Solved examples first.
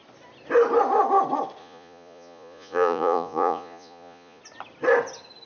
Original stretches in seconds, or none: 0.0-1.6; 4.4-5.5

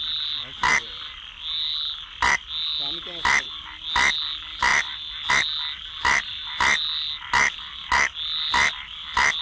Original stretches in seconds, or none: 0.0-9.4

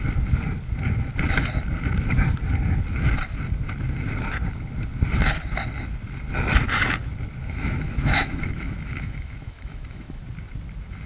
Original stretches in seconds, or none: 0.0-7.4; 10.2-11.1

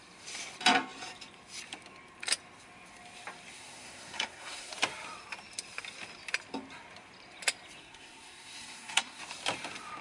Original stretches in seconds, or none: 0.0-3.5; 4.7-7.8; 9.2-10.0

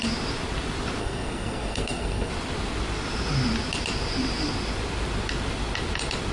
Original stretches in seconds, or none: 0.0-1.0; 2.3-6.3

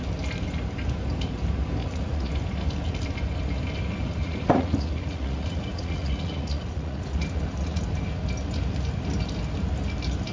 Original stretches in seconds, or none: 0.0-1.8; 2.3-4.2; 7.8-10.3

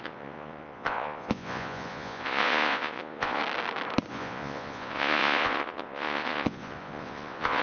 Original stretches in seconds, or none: 3.4-4.1

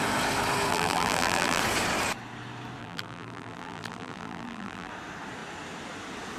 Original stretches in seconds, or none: 0.0-0.7; 1.6-2.8; 4.9-6.4